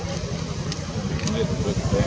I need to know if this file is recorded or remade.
recorded